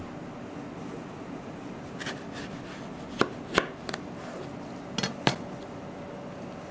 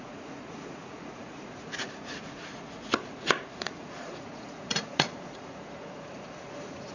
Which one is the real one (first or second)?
first